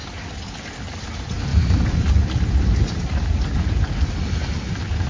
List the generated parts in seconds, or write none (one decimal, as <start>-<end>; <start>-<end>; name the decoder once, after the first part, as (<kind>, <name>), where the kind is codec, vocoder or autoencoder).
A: none

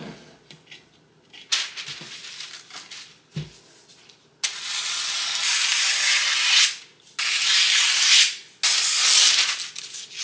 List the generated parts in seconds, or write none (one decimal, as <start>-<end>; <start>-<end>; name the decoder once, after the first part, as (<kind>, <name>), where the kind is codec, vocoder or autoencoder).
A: none

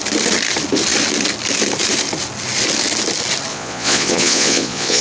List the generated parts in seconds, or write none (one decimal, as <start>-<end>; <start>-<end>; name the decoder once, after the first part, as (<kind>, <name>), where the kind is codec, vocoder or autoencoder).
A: 3.5-5.0 (vocoder, Vocos)

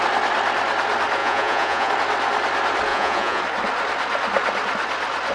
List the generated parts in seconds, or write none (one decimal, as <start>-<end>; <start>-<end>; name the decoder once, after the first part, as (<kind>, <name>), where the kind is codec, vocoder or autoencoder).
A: 1.2-1.9 (vocoder, Vocos); 2.9-3.4

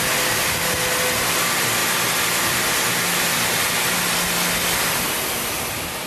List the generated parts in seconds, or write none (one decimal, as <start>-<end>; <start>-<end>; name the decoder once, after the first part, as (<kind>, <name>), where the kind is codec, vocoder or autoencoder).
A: none

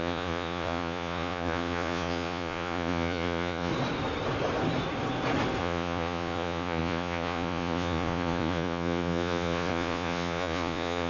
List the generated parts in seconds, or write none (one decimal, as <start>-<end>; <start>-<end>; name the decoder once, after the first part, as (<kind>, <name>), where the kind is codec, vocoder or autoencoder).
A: 0.0-3.7 (vocoder, Vocos); 5.6-11.1

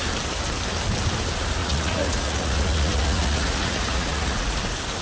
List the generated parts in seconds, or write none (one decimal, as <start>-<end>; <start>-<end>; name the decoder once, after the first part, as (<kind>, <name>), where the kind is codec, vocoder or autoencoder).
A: 1.6-4.6 (vocoder, Vocos)

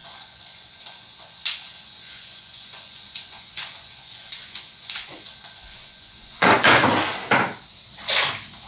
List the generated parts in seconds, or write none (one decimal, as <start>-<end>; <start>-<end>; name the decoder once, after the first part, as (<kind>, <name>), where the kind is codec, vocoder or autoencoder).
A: 0.0-6.8 (vocoder, Vocos)